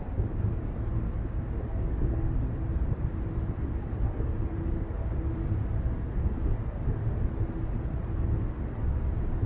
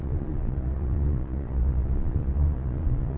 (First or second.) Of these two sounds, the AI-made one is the second